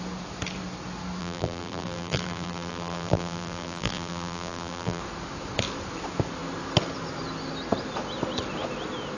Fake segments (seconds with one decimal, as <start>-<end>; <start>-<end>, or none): 1.2-5.0